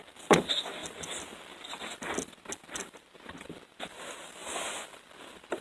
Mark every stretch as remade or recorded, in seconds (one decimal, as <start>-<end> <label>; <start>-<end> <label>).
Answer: 0.0-0.8 remade; 0.8-2.6 recorded; 2.6-5.6 remade